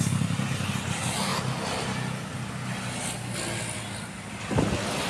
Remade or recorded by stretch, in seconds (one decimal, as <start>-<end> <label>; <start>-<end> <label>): 0.0-5.1 recorded